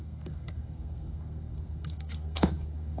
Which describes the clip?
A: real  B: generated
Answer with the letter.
B